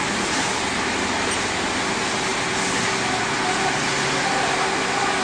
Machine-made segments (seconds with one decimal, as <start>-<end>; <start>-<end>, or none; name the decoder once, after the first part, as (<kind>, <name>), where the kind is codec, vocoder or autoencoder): none